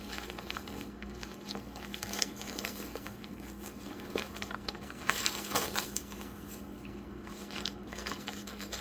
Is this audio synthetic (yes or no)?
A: yes